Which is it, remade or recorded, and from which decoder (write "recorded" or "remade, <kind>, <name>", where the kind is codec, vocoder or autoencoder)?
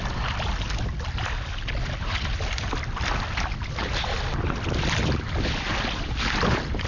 recorded